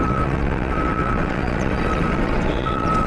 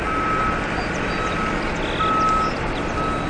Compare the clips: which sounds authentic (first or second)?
second